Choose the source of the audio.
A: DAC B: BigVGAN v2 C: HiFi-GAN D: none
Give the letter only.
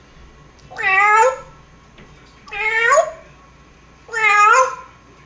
D